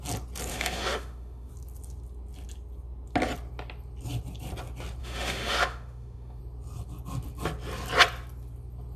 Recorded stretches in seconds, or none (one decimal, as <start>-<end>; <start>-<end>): 0.0-0.5; 1.5-5.0; 6.4-9.0